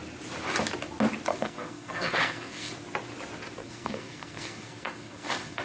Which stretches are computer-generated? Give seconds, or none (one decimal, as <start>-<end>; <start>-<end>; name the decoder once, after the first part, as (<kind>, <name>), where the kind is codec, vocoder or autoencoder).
1.3-2.7 (codec, SNAC); 3.6-5.6